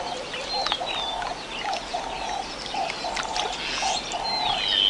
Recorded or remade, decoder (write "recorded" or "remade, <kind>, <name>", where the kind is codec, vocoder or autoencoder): recorded